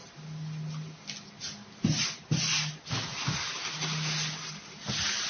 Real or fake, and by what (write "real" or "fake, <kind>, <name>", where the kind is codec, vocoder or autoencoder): real